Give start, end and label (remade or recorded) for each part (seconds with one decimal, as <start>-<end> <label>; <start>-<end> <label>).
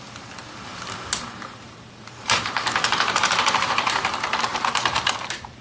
0.0-0.7 recorded; 0.7-4.1 remade; 4.1-4.5 recorded; 4.5-5.6 remade